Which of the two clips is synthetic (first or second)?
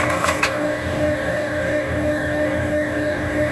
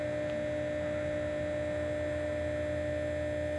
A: first